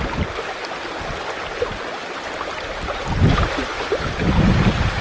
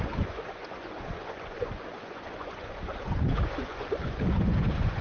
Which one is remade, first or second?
second